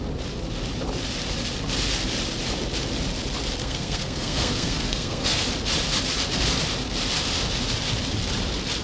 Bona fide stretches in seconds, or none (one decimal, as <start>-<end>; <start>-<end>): 0.0-3.6; 5.5-8.8